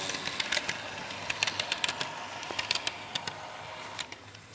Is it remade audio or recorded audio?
recorded